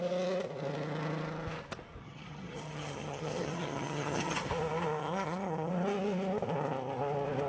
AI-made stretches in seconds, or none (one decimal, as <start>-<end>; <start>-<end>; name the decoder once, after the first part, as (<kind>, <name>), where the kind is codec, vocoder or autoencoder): 2.0-4.5 (vocoder, HiFi-GAN); 5.0-5.7